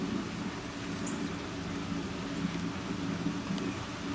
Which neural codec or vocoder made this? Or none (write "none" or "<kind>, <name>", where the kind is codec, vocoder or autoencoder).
none